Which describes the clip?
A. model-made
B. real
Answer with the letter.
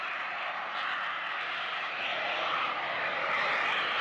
B